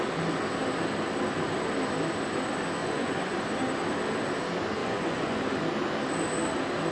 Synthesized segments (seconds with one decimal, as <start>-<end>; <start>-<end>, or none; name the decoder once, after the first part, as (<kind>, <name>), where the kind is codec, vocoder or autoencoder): 2.8-3.4 (vocoder, Vocos); 4.8-5.4